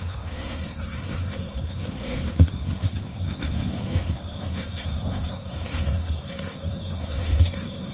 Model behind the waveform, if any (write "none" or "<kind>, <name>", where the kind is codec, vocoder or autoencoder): codec, SNAC